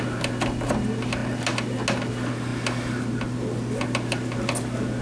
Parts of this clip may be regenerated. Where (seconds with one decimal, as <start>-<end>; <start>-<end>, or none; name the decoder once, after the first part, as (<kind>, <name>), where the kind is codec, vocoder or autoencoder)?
none